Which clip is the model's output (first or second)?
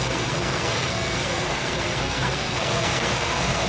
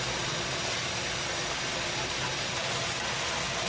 first